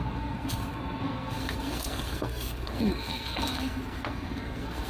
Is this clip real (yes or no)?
no